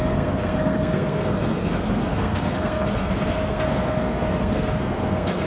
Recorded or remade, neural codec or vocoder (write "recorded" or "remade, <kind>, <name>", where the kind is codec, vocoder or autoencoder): remade, codec, SNAC